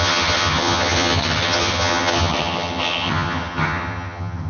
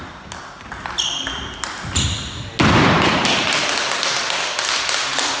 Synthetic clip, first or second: first